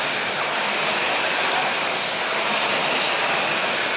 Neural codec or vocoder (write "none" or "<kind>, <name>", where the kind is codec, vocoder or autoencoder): none